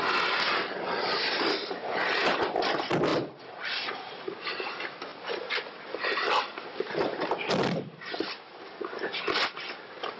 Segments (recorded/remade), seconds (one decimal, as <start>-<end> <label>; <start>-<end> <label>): 0.0-5.1 recorded; 5.1-8.6 remade; 8.6-10.2 recorded